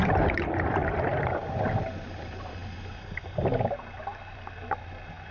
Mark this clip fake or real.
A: fake